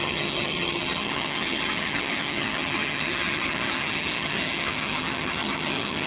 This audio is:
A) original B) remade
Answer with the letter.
B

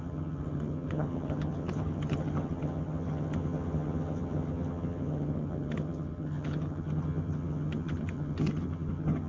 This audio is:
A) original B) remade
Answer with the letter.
B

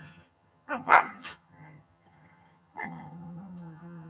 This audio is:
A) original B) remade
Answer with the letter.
B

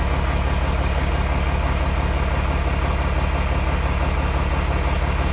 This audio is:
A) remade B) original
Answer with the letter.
B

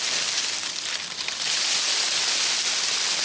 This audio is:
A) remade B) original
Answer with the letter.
B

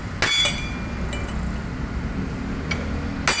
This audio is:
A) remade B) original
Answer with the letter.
B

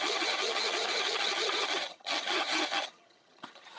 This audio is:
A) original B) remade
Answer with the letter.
B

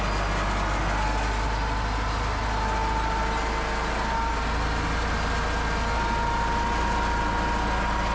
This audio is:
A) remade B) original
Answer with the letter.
B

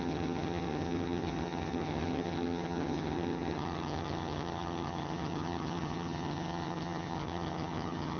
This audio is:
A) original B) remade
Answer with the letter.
B